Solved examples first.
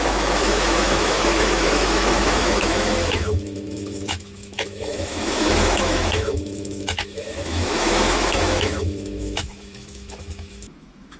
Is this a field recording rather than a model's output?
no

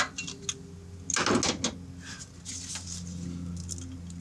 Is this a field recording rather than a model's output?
yes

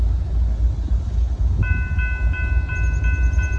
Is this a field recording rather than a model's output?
yes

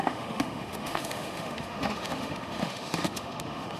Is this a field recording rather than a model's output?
no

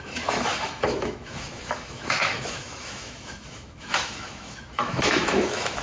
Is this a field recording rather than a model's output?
no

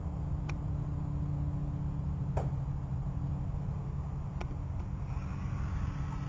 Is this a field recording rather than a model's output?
yes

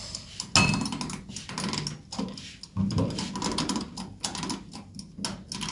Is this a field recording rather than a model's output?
yes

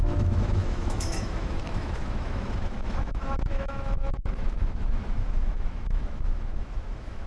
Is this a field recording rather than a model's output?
no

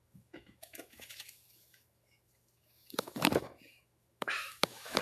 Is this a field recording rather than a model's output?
no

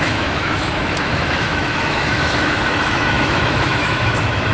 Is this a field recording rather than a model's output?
no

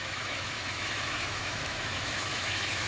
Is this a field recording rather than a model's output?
no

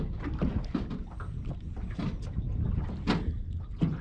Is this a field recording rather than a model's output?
yes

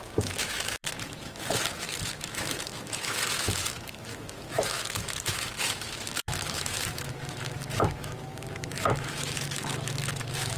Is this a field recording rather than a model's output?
no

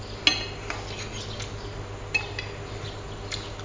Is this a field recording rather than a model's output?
yes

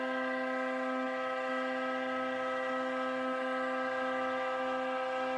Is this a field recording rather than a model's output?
no